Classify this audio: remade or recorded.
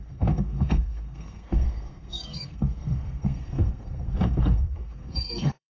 remade